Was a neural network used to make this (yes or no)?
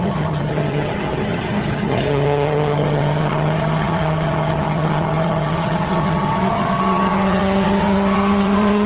yes